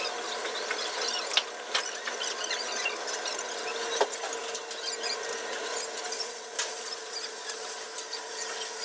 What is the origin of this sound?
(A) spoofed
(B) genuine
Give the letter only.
B